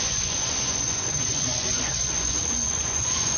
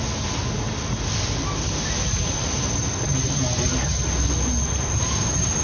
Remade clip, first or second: first